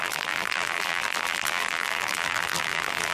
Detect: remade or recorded remade